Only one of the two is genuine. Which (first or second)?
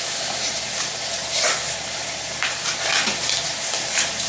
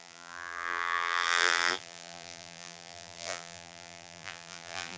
first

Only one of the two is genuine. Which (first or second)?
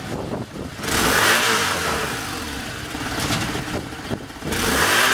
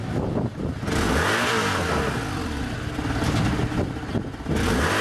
second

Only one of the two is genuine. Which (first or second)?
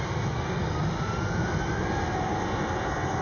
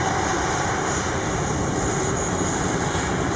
first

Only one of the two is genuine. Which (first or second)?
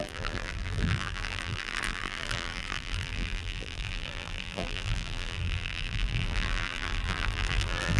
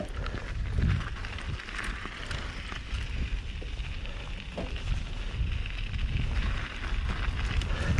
second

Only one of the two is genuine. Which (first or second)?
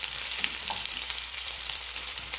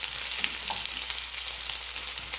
second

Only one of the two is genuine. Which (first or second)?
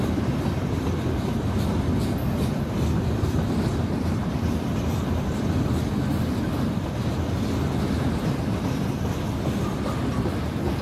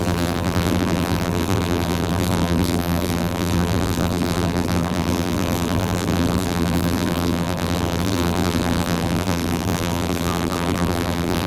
first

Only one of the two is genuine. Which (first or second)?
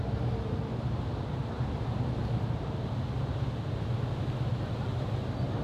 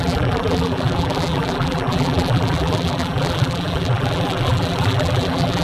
first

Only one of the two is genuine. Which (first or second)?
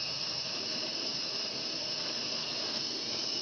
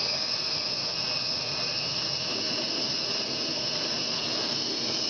second